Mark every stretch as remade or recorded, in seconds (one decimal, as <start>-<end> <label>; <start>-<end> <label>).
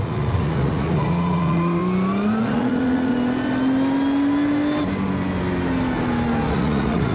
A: 0.0-1.8 remade; 1.8-2.4 recorded; 2.4-3.1 remade; 3.1-6.5 recorded; 6.5-7.1 remade